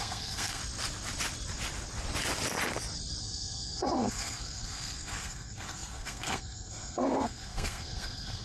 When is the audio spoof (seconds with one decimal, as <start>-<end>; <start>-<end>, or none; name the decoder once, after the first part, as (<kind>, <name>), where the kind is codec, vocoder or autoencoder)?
0.0-0.6 (codec, SNAC); 3.2-8.4